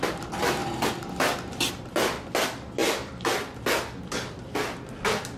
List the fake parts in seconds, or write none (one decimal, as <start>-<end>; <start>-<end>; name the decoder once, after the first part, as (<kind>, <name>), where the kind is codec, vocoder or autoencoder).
0.6-1.7 (vocoder, BigVGAN v2)